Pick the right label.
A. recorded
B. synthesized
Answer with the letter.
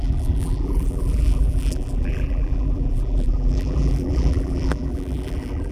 B